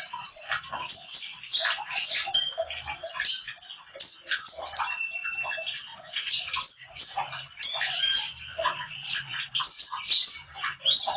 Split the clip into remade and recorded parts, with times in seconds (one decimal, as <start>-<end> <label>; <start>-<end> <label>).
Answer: 0.0-5.9 recorded; 5.9-6.5 remade; 6.5-8.5 recorded; 8.5-10.0 remade; 10.0-11.2 recorded